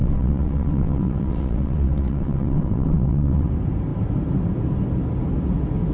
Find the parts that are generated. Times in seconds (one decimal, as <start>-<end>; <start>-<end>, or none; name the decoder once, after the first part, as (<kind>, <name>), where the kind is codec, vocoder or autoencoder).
0.0-3.5 (vocoder, WaveNeXt)